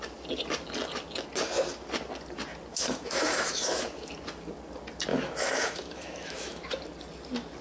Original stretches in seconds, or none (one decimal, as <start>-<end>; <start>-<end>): 0.0-2.7; 4.1-5.1; 6.6-7.6